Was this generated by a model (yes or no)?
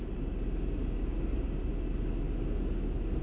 no